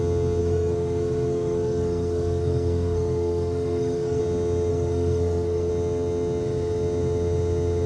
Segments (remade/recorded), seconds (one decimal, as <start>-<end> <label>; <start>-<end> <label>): 0.0-0.4 recorded; 0.4-4.2 remade; 4.2-4.7 recorded; 4.7-5.7 remade; 5.7-7.9 recorded